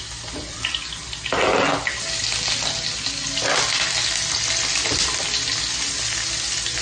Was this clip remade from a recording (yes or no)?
no